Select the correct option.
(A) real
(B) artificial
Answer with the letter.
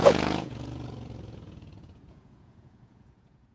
B